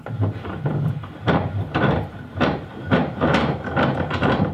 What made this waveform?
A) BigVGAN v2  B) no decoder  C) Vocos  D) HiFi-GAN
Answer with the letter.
A